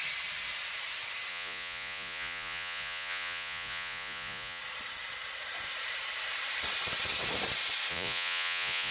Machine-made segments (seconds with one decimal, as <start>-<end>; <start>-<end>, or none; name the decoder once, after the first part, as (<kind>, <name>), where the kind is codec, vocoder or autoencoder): 1.3-4.6 (vocoder, Vocos); 7.9-8.9